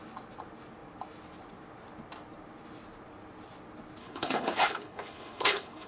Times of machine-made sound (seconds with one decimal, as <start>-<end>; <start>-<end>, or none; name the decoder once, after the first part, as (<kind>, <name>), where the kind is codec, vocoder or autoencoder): 4.0-5.9 (codec, HILCodec)